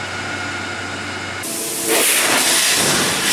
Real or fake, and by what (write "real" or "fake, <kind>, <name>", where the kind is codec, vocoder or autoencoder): real